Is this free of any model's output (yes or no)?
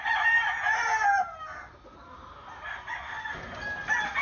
yes